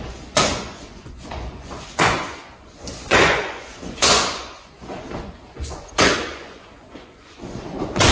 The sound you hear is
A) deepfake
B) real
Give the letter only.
A